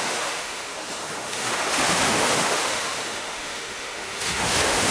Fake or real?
fake